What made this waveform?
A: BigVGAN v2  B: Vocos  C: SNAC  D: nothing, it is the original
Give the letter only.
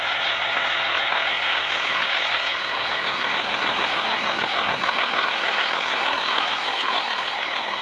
C